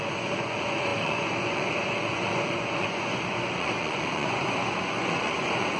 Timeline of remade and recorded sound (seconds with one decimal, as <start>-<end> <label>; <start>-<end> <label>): 0.0-5.8 remade